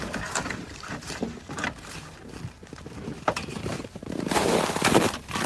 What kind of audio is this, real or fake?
fake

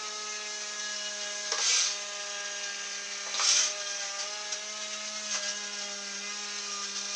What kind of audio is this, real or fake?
real